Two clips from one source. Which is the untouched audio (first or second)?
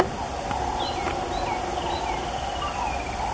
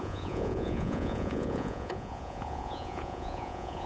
first